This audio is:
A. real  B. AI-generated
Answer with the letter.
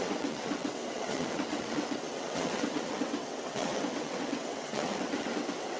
B